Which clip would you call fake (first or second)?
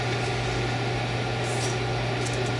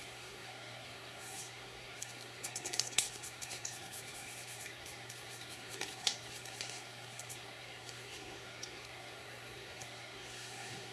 second